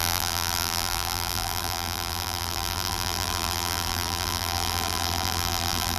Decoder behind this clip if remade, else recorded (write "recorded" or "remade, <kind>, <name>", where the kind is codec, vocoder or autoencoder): remade, vocoder, BigVGAN v2